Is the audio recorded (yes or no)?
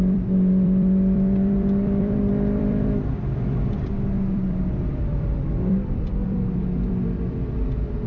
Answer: no